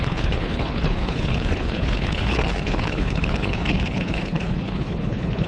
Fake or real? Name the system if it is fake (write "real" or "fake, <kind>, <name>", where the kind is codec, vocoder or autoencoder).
fake, codec, HILCodec